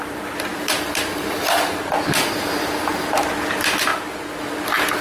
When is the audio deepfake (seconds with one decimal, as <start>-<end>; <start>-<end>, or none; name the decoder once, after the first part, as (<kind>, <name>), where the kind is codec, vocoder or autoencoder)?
0.5-2.9 (vocoder, BigVGAN v2)